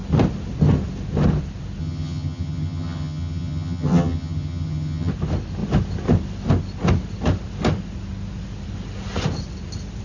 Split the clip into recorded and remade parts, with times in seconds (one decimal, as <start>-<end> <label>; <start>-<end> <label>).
0.0-1.8 recorded; 1.8-5.1 remade; 5.1-10.0 recorded